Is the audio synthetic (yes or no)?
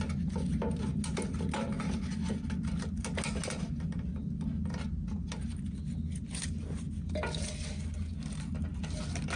no